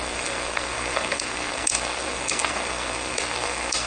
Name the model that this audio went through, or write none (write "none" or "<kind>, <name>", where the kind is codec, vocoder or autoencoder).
codec, SNAC